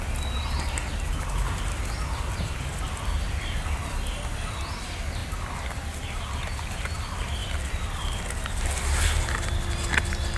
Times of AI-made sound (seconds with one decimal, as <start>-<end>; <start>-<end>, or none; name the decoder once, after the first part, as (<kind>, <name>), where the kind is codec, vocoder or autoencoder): none